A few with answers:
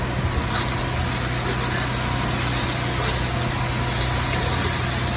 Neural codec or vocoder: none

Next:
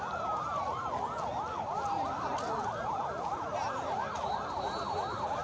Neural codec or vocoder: none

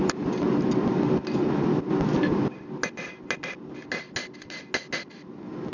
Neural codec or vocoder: none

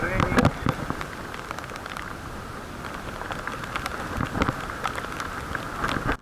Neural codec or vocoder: none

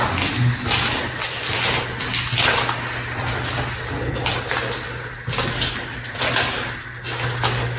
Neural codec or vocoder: none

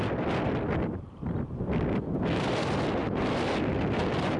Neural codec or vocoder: none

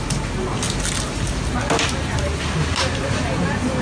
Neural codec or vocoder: none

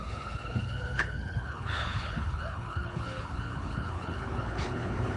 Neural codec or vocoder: codec, HILCodec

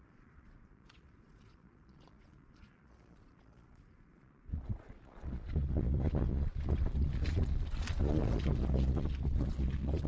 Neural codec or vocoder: vocoder, Vocos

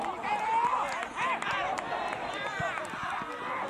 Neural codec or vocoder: none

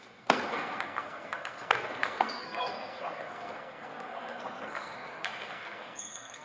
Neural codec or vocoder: codec, SNAC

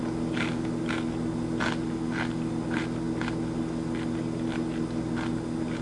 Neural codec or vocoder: none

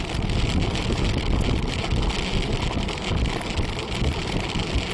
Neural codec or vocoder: none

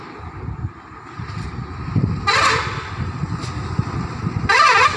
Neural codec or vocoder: vocoder, BigVGAN v2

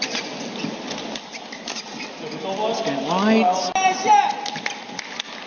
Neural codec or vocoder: none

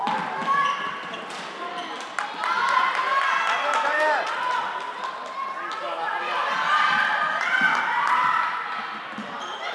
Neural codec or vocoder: none